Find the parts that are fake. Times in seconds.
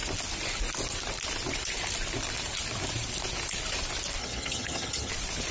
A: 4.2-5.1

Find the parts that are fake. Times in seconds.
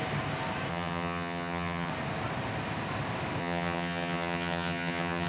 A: 0.7-1.9; 3.4-5.3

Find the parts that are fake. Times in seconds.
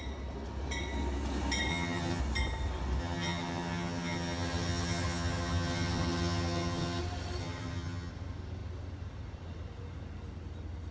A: 1.7-2.2; 3.0-7.0; 7.4-8.1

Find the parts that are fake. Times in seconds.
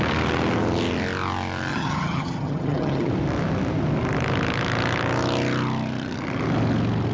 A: 1.7-3.1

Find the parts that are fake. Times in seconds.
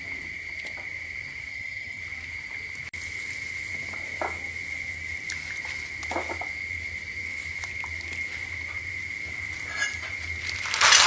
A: 1.5-2.0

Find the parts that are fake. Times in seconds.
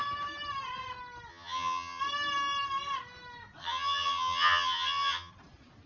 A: 1.3-2.0; 3.6-5.3